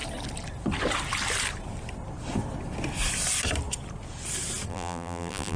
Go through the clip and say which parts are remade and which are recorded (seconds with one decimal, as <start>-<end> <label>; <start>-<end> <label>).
0.0-4.7 recorded; 4.7-5.6 remade

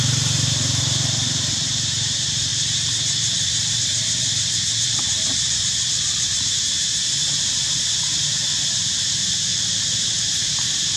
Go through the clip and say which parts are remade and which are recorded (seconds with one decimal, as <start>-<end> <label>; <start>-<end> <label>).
0.0-2.5 remade; 2.5-3.7 recorded; 3.7-11.0 remade

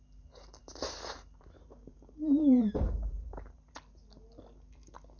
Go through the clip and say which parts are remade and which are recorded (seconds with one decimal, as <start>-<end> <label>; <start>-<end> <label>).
0.0-0.6 recorded; 0.6-3.7 remade; 3.7-5.2 recorded

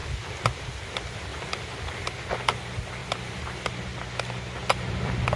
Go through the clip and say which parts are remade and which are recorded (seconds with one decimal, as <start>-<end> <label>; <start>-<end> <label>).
0.0-0.7 remade; 0.7-1.3 recorded; 1.3-2.3 remade; 2.3-3.0 recorded; 3.0-3.7 remade; 3.7-4.6 recorded; 4.6-5.4 remade

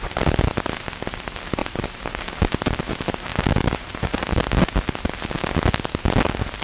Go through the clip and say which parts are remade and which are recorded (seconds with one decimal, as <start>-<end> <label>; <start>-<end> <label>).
0.0-1.6 recorded; 1.6-2.1 remade; 2.1-3.3 recorded; 3.3-4.6 remade; 4.6-6.6 recorded

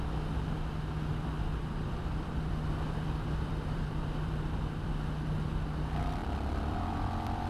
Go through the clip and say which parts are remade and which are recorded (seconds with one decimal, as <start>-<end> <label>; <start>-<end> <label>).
0.0-1.1 recorded; 1.1-4.9 remade; 4.9-6.2 recorded; 6.2-7.5 remade

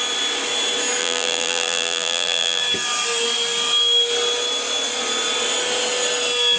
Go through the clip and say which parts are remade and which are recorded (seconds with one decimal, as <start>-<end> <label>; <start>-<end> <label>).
0.0-1.0 recorded; 1.0-2.6 remade; 2.6-6.6 recorded

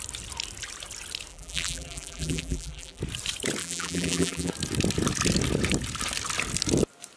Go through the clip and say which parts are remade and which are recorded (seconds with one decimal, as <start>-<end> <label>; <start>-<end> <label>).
0.0-1.3 recorded; 1.3-3.0 remade; 3.0-3.6 recorded; 3.6-4.5 remade; 4.5-7.2 recorded